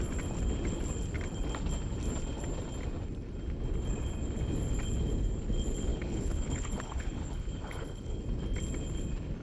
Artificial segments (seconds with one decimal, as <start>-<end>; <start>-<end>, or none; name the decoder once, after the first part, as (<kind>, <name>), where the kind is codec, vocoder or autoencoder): 5.9-8.2 (codec, HILCodec)